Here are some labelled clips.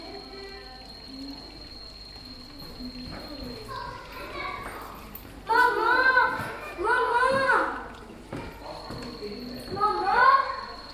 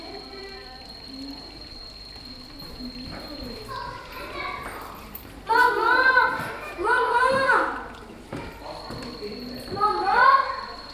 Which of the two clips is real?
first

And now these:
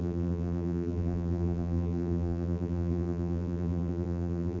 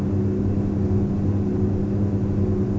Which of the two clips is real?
second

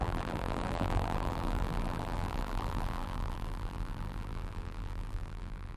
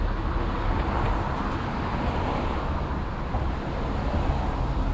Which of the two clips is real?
second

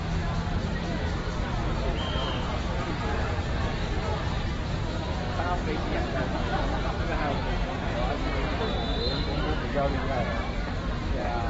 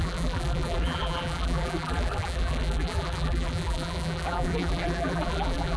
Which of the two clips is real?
first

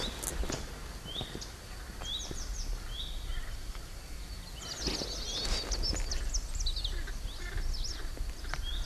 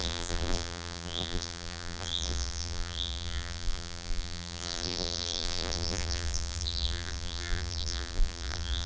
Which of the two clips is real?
first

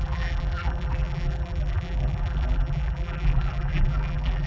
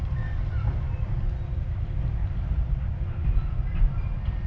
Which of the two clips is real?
second